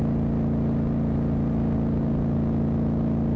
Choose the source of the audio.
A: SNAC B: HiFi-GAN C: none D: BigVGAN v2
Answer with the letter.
C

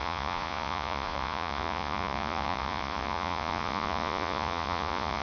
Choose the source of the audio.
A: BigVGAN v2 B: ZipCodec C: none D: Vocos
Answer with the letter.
D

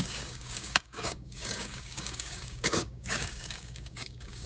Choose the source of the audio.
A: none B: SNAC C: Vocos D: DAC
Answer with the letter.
D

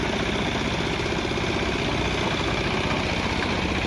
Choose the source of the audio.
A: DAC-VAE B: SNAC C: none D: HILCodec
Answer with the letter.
C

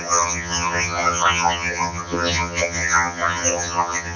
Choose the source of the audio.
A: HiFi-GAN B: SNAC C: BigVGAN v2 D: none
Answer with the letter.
A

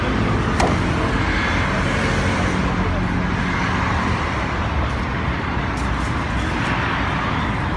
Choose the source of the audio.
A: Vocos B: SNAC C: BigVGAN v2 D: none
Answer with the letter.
D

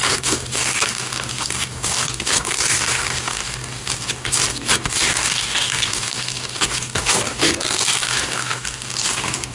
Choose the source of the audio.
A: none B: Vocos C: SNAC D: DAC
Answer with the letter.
D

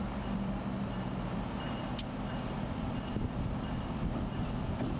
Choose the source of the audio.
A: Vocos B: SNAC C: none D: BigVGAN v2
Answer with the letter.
D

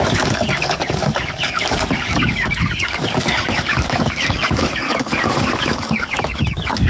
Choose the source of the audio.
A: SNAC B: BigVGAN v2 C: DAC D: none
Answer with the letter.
C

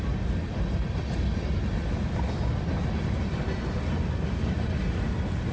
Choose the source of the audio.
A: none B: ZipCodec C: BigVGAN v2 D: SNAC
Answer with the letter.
A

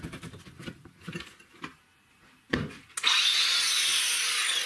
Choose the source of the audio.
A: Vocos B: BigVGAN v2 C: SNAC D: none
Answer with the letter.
D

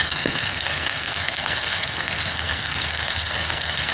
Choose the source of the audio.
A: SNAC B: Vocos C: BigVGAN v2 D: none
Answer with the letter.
A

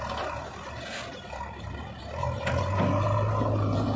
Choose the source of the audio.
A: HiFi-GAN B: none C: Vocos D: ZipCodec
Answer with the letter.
B